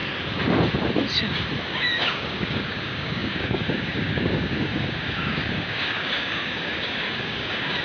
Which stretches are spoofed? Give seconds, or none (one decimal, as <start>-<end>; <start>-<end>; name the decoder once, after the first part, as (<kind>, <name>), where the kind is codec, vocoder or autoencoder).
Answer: 1.7-7.8 (codec, DAC)